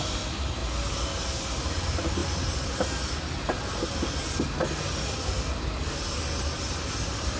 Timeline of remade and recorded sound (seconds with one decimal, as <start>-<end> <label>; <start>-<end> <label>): 0.0-7.4 recorded